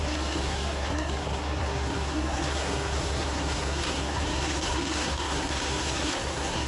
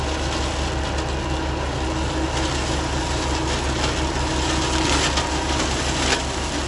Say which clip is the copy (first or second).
first